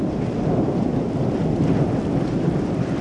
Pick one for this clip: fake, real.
fake